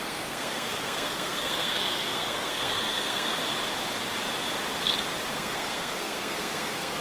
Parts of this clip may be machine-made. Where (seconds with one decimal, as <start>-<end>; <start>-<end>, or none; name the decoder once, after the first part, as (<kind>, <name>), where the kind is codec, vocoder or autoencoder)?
0.0-3.4 (codec, SNAC); 5.3-7.0